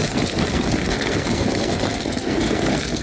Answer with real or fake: fake